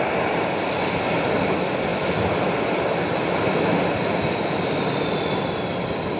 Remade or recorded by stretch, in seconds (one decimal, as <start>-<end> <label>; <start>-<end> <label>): 0.0-6.2 recorded